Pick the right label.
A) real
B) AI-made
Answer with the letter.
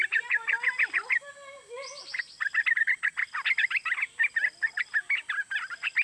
A